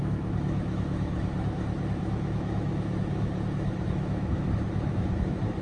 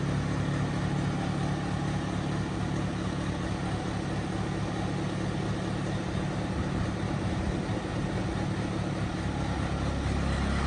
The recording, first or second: second